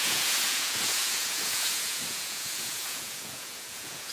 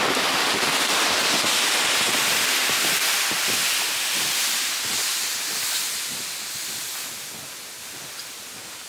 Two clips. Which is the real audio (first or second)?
second